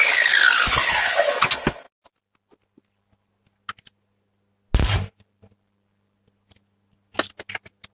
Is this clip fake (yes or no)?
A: no